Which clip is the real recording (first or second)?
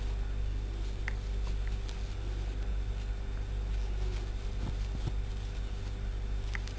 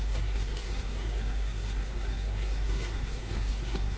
first